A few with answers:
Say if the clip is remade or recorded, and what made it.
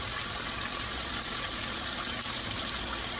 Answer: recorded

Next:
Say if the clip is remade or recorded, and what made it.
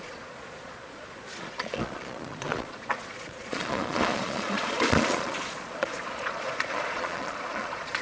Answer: remade, vocoder, Vocos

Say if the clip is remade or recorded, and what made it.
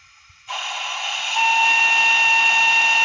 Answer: recorded